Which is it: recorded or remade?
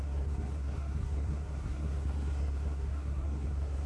remade